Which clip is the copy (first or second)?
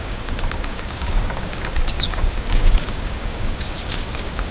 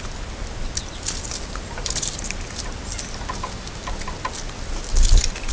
first